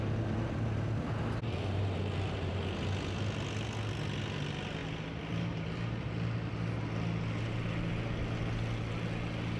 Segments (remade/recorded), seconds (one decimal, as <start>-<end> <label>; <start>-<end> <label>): 0.0-9.6 recorded